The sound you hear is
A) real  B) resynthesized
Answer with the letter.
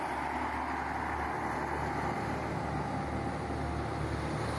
A